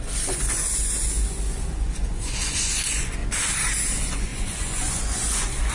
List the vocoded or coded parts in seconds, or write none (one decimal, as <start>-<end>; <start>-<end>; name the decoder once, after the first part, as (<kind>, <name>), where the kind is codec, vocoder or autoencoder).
0.0-3.2 (vocoder, Vocos); 3.9-5.7